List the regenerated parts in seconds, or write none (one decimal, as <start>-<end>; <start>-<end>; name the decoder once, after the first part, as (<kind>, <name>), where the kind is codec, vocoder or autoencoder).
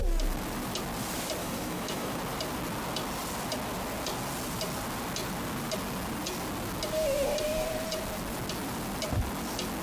1.4-2.2 (autoencoder, DAC-VAE)